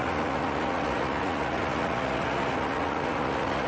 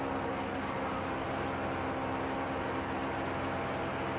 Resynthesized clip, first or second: first